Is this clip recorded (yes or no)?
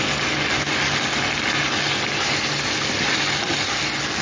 yes